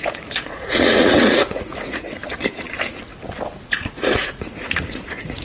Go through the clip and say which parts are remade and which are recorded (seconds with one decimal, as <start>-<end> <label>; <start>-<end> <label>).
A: 0.0-2.2 remade; 2.2-3.7 recorded; 3.7-5.4 remade